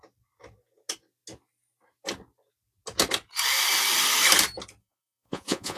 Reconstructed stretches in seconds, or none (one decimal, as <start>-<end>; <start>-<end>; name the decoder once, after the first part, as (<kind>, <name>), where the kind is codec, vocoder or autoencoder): 4.8-5.8 (vocoder, Vocos)